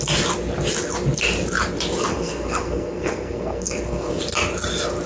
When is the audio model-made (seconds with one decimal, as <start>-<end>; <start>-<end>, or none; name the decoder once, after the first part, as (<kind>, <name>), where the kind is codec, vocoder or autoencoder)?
2.1-4.2 (codec, SNAC)